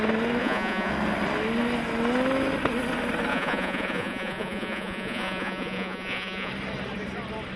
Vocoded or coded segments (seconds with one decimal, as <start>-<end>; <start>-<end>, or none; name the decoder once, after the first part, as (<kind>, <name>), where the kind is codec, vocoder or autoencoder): 0.4-0.9 (vocoder, Vocos); 3.3-6.5